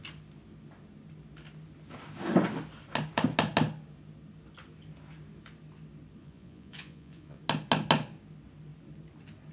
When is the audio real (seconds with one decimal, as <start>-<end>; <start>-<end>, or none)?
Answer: 0.0-6.2; 7.4-9.5